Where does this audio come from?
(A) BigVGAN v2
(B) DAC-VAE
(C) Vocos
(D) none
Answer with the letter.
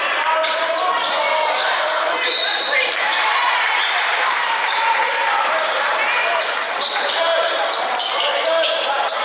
A